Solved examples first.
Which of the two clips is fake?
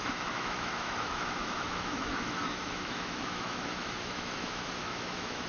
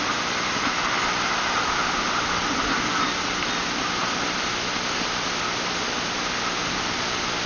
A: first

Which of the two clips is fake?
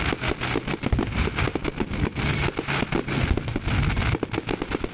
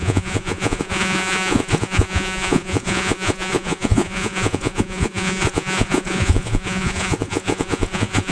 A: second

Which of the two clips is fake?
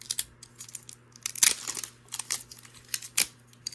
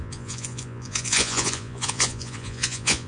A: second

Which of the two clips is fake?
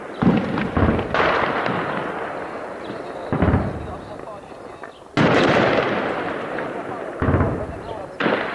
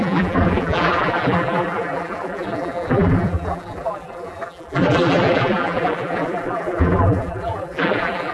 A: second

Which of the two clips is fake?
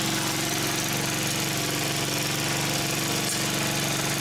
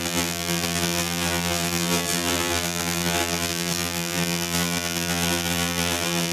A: second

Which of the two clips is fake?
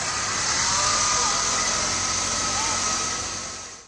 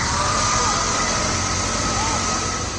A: second